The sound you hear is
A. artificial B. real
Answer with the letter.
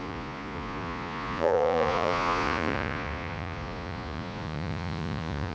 A